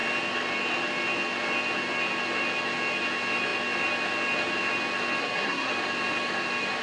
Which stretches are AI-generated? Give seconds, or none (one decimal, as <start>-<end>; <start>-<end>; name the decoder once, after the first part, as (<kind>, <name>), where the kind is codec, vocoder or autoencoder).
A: 5.2-5.7 (codec, SNAC)